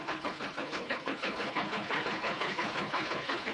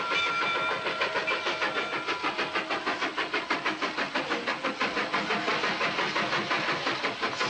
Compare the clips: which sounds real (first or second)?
second